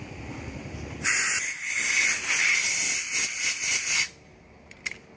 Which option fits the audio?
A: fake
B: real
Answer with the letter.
A